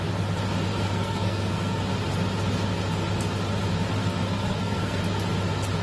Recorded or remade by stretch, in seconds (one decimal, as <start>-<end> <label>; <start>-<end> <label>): 0.0-0.7 recorded; 0.7-1.8 remade; 1.8-4.0 recorded; 4.0-5.0 remade; 5.0-5.8 recorded